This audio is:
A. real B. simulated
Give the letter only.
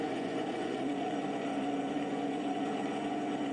B